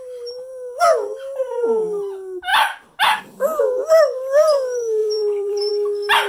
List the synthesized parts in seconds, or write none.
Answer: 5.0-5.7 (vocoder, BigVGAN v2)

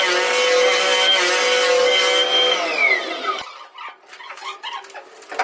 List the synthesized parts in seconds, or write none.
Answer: 3.0-3.5 (vocoder, BigVGAN v2)